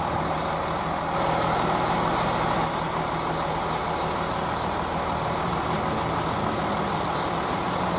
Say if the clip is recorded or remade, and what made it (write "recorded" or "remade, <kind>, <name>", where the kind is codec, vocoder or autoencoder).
recorded